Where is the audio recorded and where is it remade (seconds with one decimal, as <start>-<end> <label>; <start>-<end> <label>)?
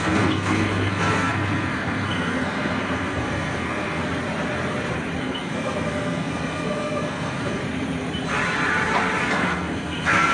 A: 0.0-4.0 remade; 4.0-5.2 recorded; 5.2-7.6 remade; 7.6-9.2 recorded; 9.2-10.3 remade